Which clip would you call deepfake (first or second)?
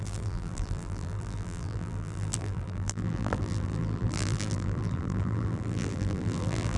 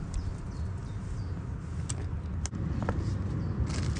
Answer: first